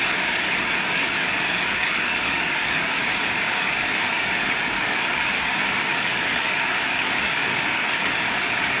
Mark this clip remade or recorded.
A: remade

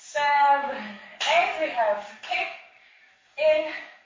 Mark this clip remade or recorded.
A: remade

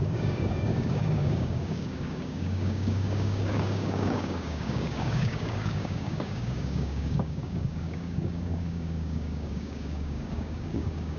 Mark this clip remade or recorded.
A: remade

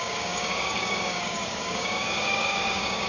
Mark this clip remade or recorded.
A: remade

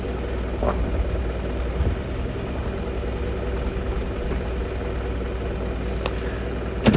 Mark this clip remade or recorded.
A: recorded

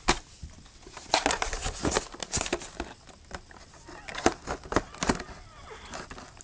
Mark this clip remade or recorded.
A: recorded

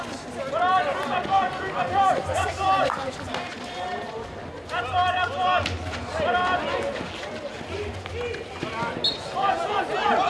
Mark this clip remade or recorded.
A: recorded